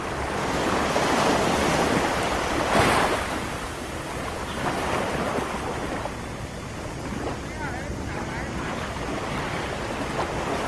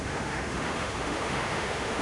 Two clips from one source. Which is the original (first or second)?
first